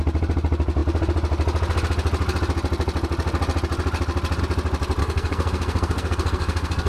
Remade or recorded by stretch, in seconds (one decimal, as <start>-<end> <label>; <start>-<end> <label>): 0.0-5.0 recorded; 5.0-6.9 remade